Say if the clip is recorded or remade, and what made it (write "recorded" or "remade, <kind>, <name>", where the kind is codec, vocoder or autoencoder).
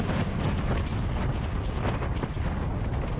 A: recorded